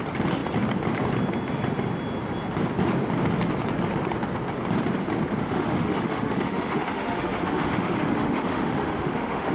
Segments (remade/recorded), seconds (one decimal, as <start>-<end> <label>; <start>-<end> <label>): 0.0-5.4 recorded; 5.4-9.5 remade

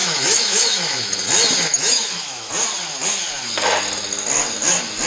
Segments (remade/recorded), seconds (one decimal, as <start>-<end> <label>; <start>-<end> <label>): 0.0-1.2 remade; 1.2-1.7 recorded; 1.7-2.5 remade; 2.5-5.1 recorded

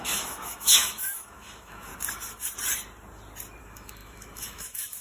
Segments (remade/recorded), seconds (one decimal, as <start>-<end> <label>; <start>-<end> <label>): 0.0-1.9 remade; 1.9-3.6 recorded; 3.6-5.0 remade

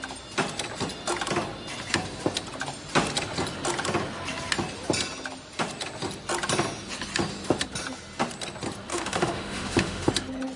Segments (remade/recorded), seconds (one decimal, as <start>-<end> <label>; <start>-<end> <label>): 0.0-8.9 recorded; 8.9-10.1 remade; 10.1-10.6 recorded